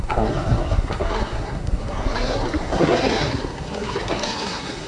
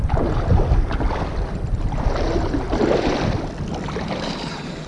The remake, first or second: first